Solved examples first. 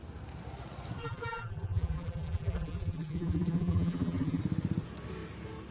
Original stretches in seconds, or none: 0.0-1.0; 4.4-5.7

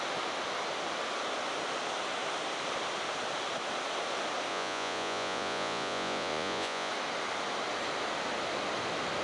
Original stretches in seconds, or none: 0.0-4.5; 6.9-9.2

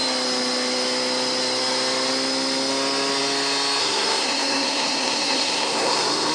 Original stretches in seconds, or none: 0.0-3.8

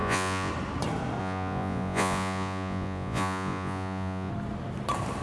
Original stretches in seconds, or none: 0.5-1.2; 4.3-5.2

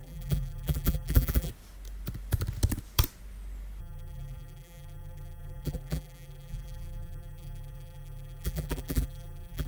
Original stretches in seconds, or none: 1.5-3.8